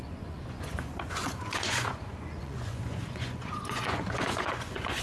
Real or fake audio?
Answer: fake